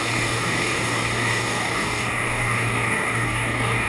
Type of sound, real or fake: fake